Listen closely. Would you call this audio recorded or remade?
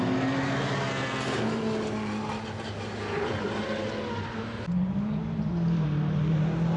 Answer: recorded